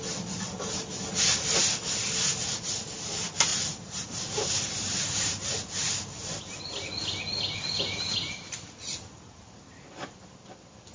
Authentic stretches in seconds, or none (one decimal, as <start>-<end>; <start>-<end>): 0.0-3.5; 6.8-10.9